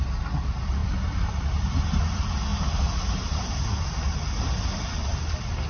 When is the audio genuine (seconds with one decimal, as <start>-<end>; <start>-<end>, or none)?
0.0-5.7